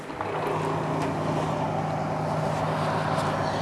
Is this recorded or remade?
recorded